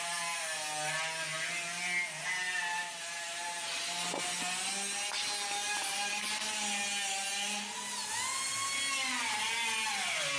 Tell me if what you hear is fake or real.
real